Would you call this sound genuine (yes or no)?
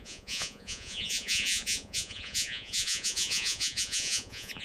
no